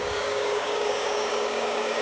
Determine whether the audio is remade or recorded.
remade